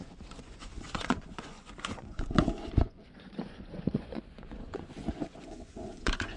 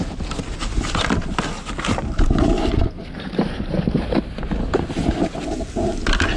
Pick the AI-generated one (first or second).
first